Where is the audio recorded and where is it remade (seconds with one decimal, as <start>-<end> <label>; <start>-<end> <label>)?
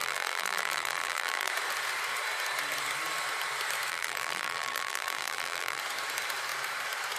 0.0-1.5 remade; 1.5-3.9 recorded; 3.9-5.8 remade; 5.8-7.2 recorded